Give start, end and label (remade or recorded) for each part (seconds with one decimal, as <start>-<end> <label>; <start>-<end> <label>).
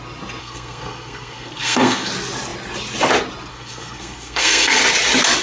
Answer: 0.0-0.4 recorded; 0.4-2.1 remade; 2.1-3.5 recorded; 3.5-4.8 remade; 4.8-5.4 recorded